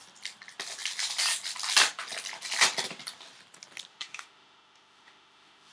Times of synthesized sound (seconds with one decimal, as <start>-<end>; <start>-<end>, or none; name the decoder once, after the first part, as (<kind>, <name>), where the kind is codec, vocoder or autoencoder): 3.9-5.7 (autoencoder, DAC-VAE)